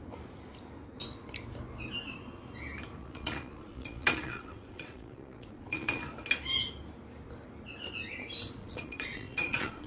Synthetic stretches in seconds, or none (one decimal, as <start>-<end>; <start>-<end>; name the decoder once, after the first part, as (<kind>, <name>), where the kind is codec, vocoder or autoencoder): 3.0-6.0 (vocoder, Vocos); 8.6-9.9